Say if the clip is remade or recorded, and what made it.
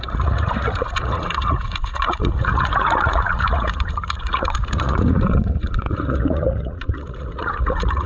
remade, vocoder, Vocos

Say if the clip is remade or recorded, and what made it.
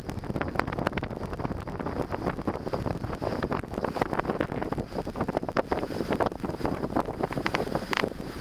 recorded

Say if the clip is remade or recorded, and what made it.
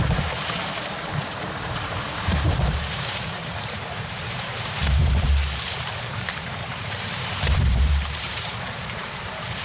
remade, vocoder, BigVGAN v2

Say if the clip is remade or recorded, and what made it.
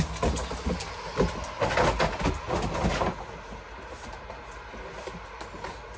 recorded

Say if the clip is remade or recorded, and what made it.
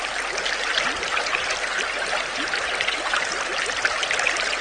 recorded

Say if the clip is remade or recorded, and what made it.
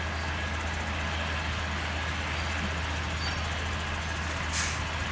recorded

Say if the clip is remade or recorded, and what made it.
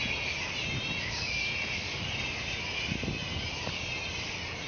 recorded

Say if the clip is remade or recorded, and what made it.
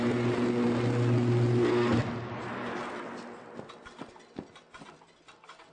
recorded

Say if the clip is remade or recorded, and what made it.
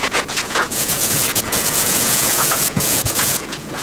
remade, vocoder, Vocos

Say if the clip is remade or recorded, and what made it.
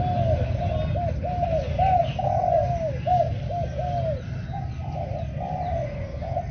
recorded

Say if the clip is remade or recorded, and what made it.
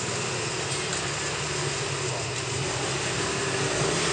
recorded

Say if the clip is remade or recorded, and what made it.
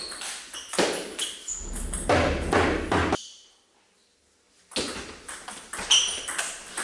recorded